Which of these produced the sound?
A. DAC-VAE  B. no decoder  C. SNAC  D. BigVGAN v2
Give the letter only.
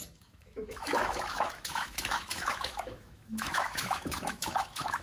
A